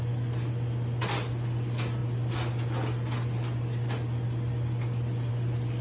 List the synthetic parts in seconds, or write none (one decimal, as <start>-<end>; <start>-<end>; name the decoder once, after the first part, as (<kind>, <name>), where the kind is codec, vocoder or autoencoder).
none